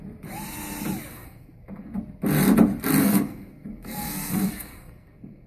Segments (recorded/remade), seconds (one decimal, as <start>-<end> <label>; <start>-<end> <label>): 0.0-1.1 recorded; 1.1-2.0 remade; 2.0-3.0 recorded; 3.0-5.5 remade